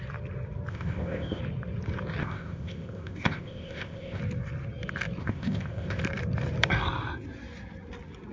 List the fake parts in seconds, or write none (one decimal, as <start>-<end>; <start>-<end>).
0.7-1.4; 2.2-4.2; 5.2-6.0